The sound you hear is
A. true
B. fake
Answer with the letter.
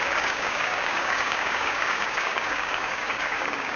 B